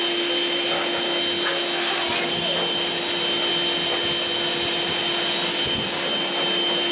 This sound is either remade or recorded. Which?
recorded